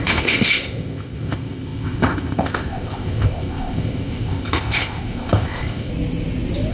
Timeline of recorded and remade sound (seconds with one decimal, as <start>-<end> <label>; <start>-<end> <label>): 0.0-5.9 remade; 5.9-6.7 recorded